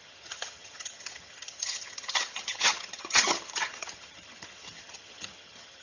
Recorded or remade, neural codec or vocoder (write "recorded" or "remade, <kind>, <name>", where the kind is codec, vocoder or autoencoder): remade, vocoder, HiFi-GAN